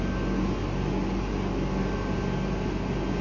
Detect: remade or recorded recorded